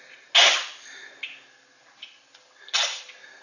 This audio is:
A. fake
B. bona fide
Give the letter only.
B